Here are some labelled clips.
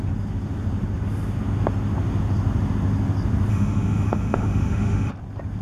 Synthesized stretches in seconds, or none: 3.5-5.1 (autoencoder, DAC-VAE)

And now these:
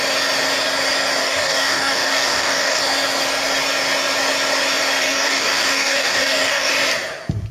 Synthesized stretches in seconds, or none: 1.2-2.8 (codec, DAC); 5.0-6.7

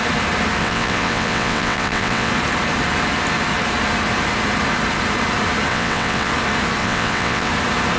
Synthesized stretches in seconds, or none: 0.6-2.3 (vocoder, WaveNeXt); 5.7-6.3; 6.8-7.5

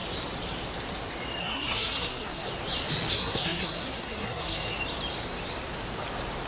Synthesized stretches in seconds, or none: 1.4-2.5 (codec, SNAC); 3.1-4.8

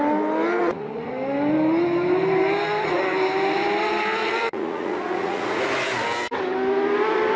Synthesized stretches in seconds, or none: 0.6-1.1 (vocoder, Vocos); 4.2-5.6

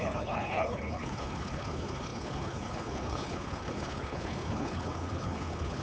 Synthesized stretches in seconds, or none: 0.0-5.8 (codec, HILCodec)

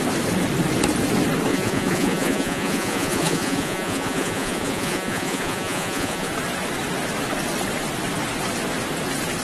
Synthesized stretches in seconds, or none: 1.5-6.3 (vocoder, Vocos)

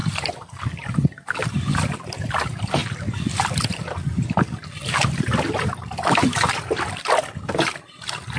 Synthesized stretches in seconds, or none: none